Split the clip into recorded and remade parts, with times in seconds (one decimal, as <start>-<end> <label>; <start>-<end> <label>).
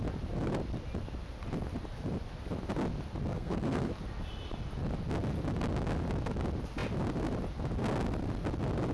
0.0-3.3 recorded; 3.3-3.9 remade; 3.9-8.9 recorded